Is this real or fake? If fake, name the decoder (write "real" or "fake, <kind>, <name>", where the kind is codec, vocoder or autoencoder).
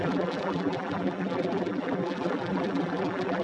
fake, vocoder, BigVGAN v2